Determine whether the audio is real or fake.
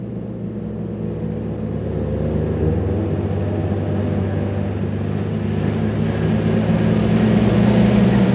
real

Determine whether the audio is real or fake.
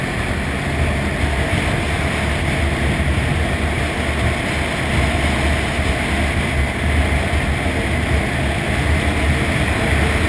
real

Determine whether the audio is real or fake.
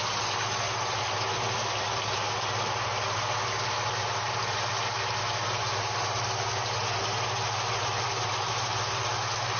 real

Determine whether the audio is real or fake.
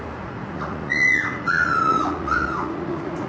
fake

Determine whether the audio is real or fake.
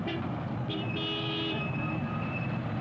real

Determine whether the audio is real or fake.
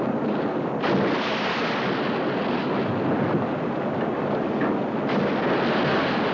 real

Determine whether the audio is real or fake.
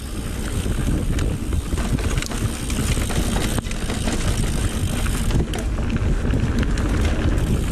real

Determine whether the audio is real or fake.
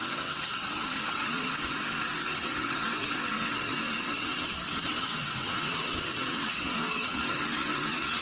fake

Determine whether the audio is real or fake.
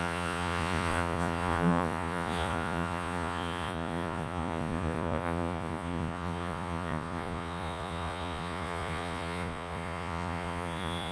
fake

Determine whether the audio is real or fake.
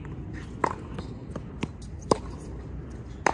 real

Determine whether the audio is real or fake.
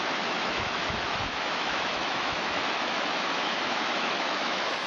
fake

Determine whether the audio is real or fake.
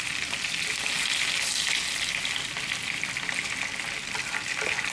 real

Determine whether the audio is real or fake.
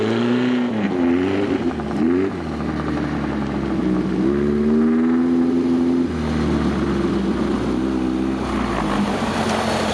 real